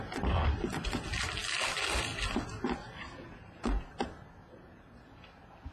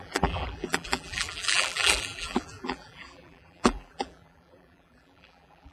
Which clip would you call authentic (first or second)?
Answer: first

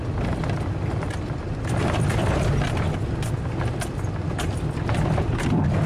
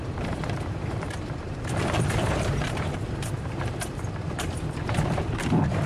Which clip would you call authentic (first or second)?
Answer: first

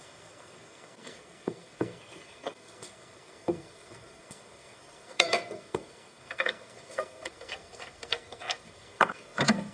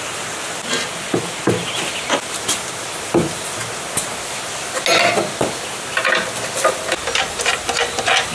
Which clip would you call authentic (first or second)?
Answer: second